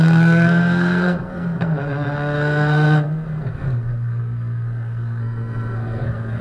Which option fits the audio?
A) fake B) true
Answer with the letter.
A